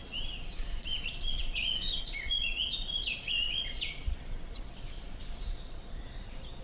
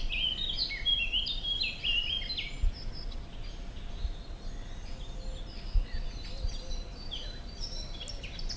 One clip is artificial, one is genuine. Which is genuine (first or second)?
second